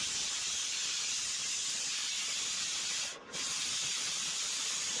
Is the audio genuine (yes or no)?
yes